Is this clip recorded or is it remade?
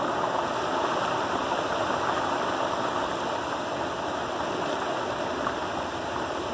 recorded